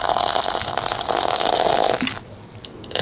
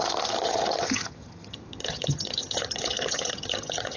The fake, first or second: second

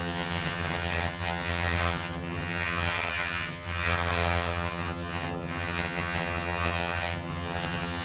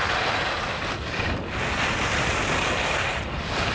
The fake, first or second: first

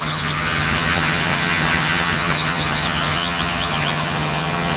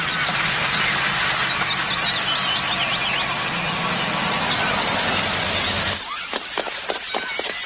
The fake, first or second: first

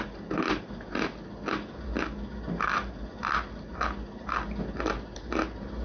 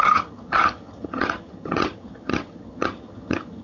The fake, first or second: second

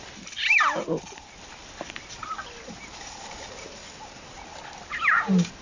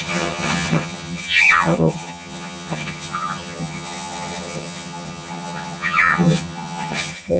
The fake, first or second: second